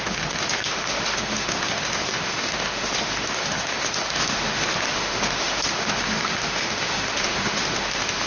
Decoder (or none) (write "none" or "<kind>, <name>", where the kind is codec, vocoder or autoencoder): autoencoder, DAC-VAE